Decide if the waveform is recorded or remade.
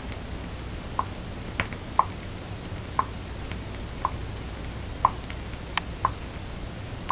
recorded